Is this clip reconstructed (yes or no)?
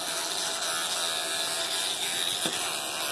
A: no